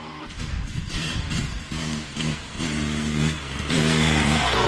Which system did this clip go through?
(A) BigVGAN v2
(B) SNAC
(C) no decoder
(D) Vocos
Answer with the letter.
B